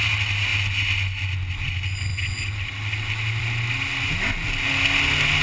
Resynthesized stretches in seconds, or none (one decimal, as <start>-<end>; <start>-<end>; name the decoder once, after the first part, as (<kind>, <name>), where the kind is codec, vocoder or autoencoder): none